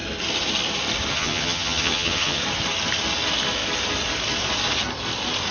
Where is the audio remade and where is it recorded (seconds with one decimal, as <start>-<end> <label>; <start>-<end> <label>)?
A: 0.0-1.1 recorded; 1.1-2.4 remade; 2.4-5.5 recorded